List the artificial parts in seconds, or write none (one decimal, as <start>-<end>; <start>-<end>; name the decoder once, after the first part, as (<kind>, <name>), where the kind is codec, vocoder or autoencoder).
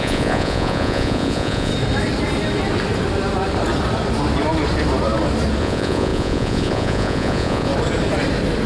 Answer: 0.0-1.7 (vocoder, Vocos); 5.6-7.7